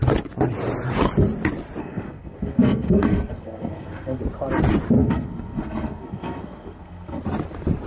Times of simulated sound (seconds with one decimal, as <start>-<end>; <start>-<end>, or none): 1.8-4.2; 5.0-7.2